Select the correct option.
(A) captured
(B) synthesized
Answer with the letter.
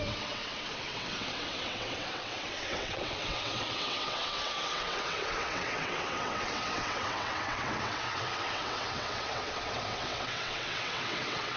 B